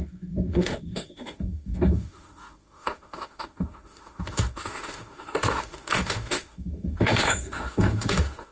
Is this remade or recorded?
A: remade